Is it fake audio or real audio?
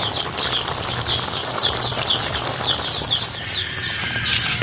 real